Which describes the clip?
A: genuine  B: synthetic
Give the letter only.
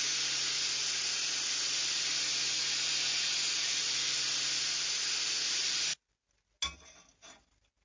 A